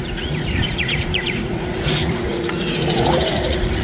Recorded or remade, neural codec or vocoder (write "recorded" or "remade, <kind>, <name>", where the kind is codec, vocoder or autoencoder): remade, vocoder, Vocos